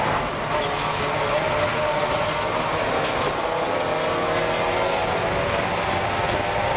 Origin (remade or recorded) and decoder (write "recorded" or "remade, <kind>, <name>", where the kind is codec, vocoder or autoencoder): recorded